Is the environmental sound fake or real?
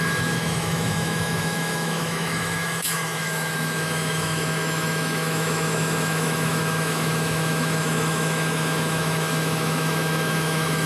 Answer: fake